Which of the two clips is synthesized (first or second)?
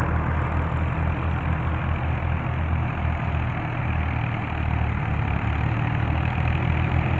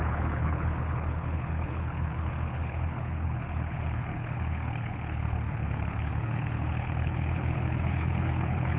second